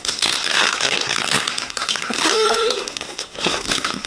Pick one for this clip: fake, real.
fake